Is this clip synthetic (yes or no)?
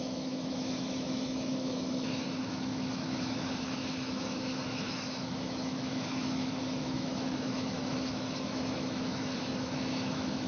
yes